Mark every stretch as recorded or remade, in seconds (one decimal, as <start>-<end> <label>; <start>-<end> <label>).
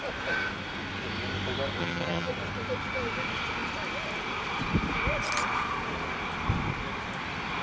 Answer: 0.0-1.8 recorded; 1.8-2.3 remade; 2.3-7.6 recorded